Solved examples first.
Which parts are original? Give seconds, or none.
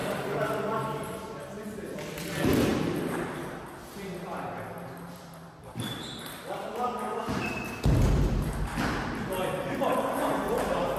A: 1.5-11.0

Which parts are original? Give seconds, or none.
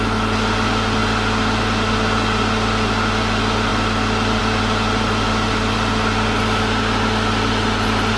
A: 0.0-8.2